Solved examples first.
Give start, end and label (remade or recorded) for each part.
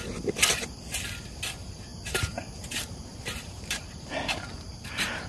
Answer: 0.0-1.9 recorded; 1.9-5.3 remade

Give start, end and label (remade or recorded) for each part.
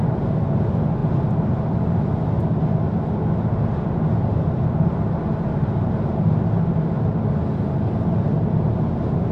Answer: 0.0-9.3 recorded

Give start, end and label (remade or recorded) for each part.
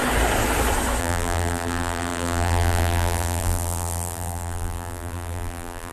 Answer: 0.0-1.0 recorded; 1.0-5.9 remade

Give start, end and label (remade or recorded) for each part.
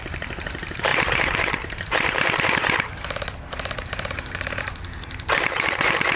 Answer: 0.0-6.2 remade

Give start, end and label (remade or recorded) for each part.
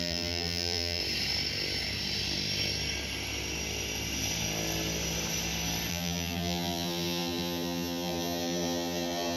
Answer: 0.0-1.0 remade; 1.0-5.9 recorded; 5.9-9.4 remade